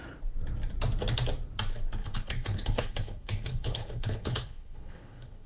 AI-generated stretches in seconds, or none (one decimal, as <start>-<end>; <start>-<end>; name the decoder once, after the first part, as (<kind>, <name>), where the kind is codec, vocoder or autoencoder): 2.0-5.5 (codec, HILCodec)